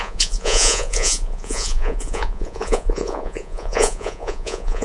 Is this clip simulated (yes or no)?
yes